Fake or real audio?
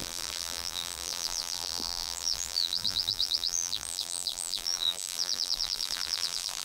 fake